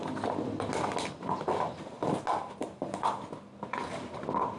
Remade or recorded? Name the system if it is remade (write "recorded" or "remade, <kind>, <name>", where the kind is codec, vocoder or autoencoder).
recorded